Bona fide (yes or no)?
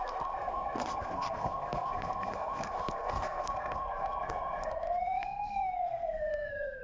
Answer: no